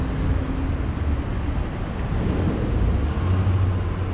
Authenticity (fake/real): real